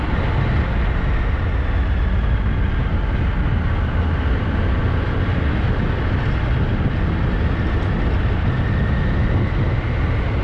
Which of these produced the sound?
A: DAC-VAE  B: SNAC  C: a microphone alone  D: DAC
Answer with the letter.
C